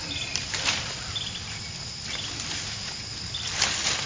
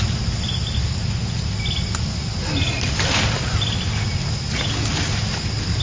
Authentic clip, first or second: second